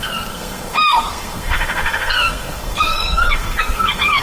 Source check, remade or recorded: remade